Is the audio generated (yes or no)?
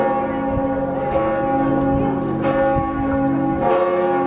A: no